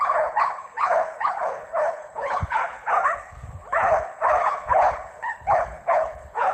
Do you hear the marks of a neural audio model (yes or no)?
yes